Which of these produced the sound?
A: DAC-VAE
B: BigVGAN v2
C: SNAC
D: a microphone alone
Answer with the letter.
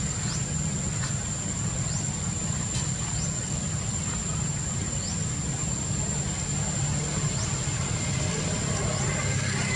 D